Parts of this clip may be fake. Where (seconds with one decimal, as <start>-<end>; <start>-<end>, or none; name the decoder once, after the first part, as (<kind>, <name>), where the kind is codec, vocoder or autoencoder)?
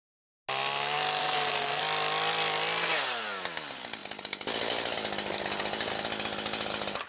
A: 1.2-1.8 (codec, SNAC)